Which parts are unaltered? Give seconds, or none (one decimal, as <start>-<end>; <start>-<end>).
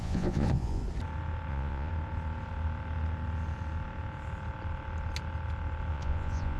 0.8-1.5; 1.9-5.9